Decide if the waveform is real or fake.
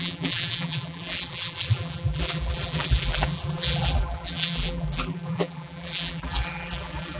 fake